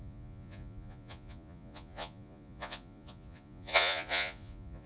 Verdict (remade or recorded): remade